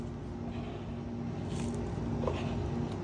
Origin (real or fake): real